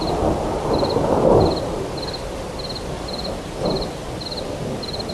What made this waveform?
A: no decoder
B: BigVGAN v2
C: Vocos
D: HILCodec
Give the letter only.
A